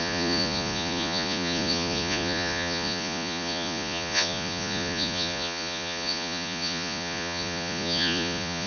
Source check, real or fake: fake